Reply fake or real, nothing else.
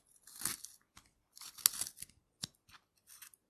real